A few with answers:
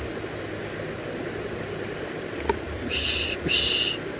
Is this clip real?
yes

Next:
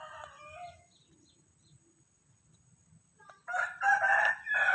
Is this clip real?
yes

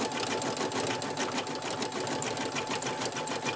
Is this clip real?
yes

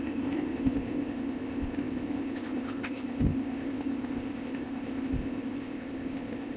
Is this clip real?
no